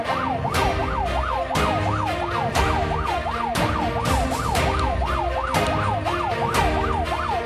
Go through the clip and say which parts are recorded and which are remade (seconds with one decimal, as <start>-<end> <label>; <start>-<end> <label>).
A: 0.0-7.5 recorded